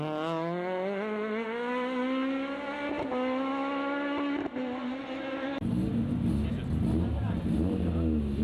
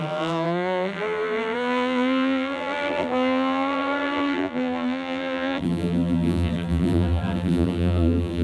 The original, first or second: first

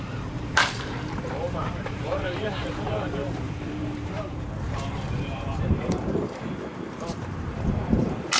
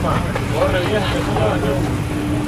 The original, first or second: second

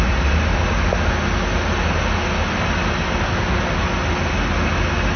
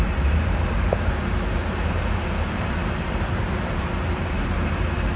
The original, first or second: first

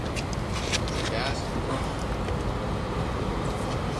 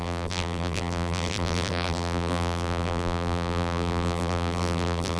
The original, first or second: first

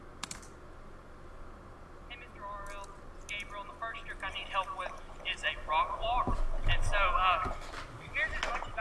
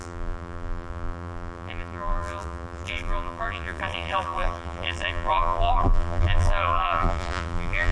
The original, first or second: first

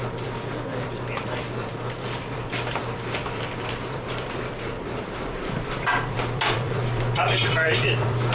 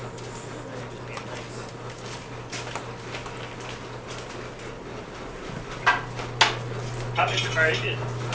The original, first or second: second